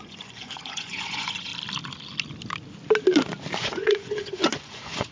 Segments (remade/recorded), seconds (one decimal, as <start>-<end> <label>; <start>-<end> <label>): 0.0-1.5 remade; 1.5-3.6 recorded; 3.6-5.1 remade

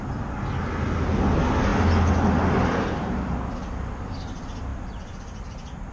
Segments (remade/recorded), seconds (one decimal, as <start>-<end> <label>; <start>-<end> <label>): 0.0-5.9 recorded

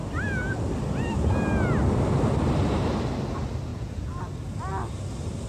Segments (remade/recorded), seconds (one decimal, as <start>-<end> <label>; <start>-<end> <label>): 0.0-3.7 recorded; 3.7-4.2 remade; 4.2-5.5 recorded

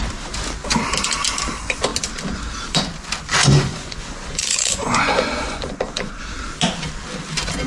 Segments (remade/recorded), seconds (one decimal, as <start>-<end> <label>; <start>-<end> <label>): 0.0-3.4 recorded; 3.4-6.2 remade; 6.2-7.7 recorded

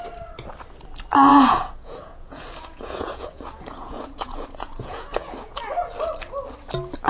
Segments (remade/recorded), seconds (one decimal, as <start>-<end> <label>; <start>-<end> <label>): 0.0-1.3 recorded; 1.3-5.6 remade; 5.6-7.1 recorded

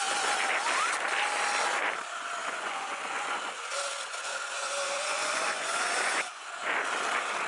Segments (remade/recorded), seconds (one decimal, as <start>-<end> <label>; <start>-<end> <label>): 0.0-2.4 recorded; 2.4-6.7 remade; 6.7-7.5 recorded

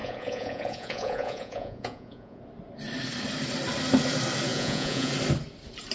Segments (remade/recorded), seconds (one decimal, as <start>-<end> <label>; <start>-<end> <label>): 0.0-2.4 remade; 2.4-4.5 recorded; 4.5-5.1 remade; 5.1-5.9 recorded